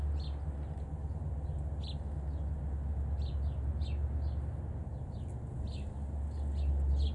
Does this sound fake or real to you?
real